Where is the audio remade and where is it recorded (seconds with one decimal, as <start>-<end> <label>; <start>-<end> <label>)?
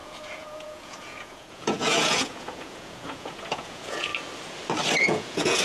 0.0-4.1 remade; 4.1-5.0 recorded; 5.0-5.6 remade